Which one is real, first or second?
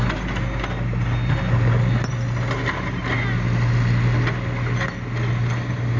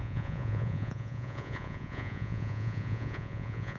first